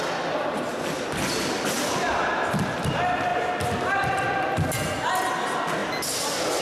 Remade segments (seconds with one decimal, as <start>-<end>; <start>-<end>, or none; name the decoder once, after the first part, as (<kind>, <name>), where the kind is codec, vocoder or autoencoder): none

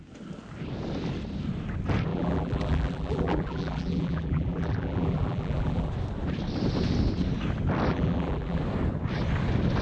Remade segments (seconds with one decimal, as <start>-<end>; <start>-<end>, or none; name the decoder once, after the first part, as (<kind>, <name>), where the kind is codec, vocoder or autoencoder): 2.1-5.9 (vocoder, BigVGAN v2); 7.9-8.6